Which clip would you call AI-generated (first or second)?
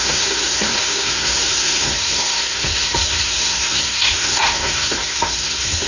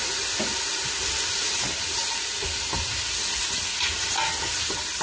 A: first